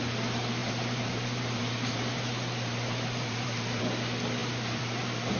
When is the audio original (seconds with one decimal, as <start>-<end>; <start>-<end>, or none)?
0.0-0.6; 3.8-4.4